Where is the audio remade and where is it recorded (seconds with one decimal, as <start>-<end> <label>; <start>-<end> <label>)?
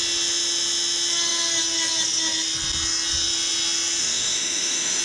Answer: 0.0-4.0 recorded; 4.0-5.0 remade